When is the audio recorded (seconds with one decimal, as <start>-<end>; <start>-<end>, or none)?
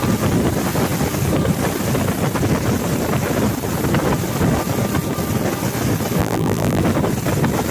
0.0-6.2; 6.8-7.7